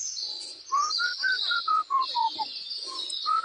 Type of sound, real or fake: fake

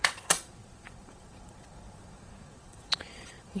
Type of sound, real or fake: fake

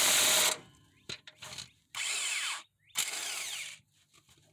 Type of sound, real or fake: fake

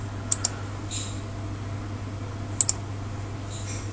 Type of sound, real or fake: real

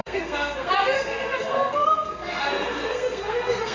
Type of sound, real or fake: fake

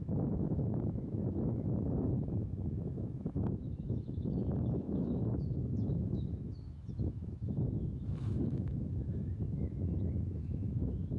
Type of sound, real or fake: fake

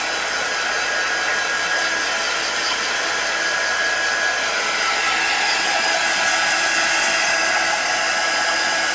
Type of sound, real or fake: real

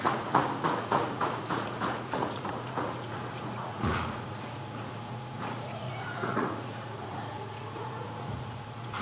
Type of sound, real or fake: fake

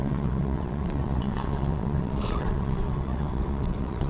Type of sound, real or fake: fake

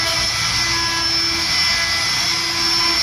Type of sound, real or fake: real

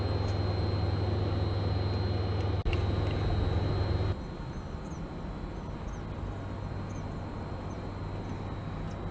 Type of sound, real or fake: real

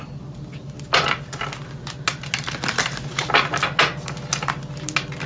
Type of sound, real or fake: real